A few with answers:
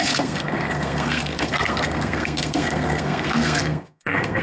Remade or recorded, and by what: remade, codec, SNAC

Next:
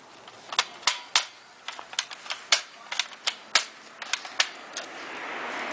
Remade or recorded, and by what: recorded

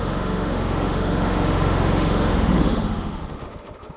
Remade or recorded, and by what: remade, autoencoder, DAC-VAE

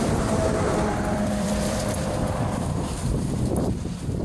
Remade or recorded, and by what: remade, vocoder, BigVGAN v2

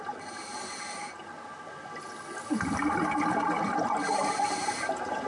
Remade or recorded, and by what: recorded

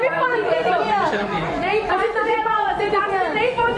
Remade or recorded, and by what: remade, vocoder, Vocos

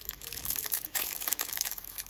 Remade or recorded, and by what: remade, autoencoder, DAC-VAE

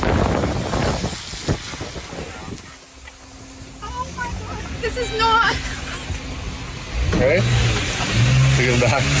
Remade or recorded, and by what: recorded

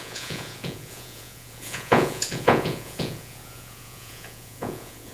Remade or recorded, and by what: remade, vocoder, Vocos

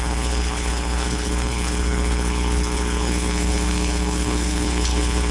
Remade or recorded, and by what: remade, codec, HILCodec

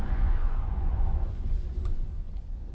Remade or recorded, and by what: remade, vocoder, Vocos